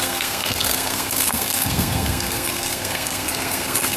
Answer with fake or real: fake